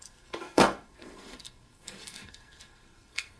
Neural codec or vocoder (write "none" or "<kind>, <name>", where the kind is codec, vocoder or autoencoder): codec, SNAC